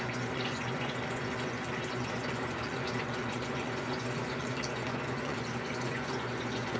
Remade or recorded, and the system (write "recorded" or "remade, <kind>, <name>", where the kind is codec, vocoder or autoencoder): remade, vocoder, Vocos